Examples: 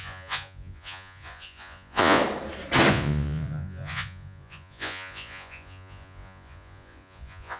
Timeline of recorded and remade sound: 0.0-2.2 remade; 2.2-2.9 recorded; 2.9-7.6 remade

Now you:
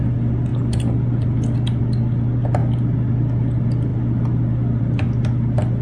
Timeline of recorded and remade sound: 0.0-5.8 recorded